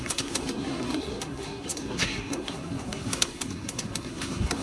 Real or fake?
fake